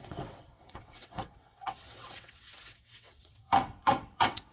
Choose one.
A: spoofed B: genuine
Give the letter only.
A